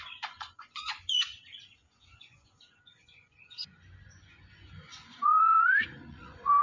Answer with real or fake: fake